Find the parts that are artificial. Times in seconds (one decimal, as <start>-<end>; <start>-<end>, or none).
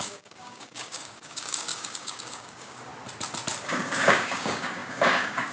0.0-2.9; 3.6-5.5